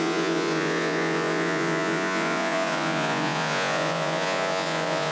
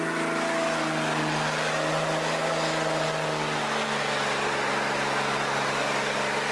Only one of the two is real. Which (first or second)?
second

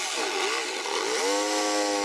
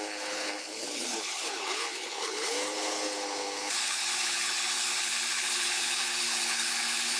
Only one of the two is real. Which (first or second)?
first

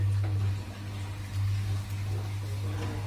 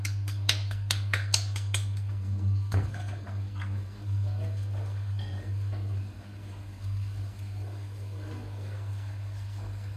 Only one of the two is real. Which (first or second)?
first